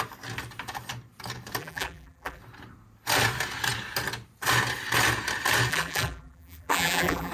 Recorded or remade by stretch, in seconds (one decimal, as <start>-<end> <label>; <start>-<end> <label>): 0.0-1.6 recorded; 1.6-2.4 remade; 2.4-5.7 recorded; 5.7-7.3 remade